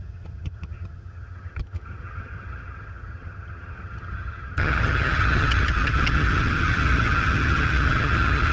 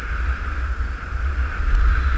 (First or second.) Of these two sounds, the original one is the second